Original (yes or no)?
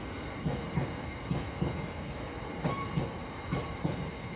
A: yes